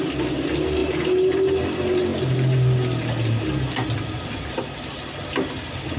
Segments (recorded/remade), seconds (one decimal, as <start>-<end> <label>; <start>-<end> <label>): 0.0-6.0 recorded